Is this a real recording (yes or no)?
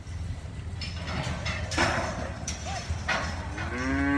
yes